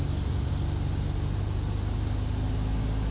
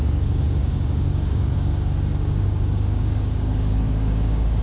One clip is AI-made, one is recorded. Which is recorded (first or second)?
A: first